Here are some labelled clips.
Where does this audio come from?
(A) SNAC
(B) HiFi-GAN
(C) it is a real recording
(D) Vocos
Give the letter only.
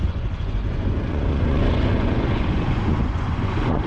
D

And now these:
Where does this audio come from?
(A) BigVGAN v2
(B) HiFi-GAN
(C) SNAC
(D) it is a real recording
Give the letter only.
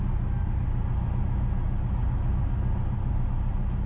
D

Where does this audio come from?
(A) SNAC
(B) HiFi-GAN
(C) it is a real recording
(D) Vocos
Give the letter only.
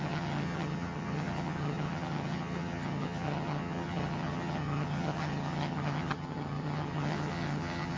B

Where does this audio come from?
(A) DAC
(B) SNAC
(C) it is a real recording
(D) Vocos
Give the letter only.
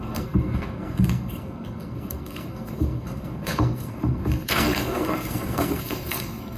B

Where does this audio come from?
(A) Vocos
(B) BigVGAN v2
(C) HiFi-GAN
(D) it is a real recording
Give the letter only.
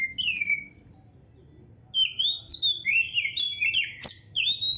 D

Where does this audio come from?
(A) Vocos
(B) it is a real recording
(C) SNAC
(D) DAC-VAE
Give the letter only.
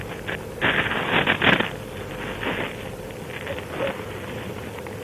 B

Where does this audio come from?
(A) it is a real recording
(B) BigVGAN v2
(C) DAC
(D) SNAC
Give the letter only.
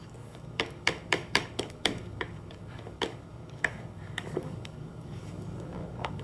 C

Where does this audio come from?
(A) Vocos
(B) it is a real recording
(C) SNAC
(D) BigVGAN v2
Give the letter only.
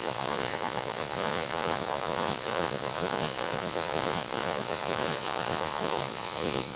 A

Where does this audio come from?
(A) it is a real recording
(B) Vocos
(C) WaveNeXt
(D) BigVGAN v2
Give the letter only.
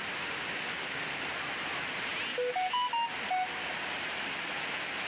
A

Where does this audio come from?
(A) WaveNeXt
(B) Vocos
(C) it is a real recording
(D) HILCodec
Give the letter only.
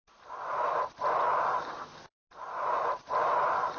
C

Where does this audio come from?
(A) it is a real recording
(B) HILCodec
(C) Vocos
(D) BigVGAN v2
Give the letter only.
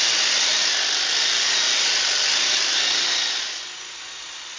A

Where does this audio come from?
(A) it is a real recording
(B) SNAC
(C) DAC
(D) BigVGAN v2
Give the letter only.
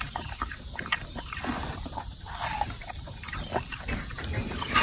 D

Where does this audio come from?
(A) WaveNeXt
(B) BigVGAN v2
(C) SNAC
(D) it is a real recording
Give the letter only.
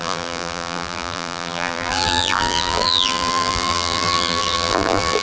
B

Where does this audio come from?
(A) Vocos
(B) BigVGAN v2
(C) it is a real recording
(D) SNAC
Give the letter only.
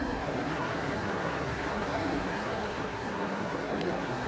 D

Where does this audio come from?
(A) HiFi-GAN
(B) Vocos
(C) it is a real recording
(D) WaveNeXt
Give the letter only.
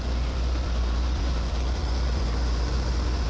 B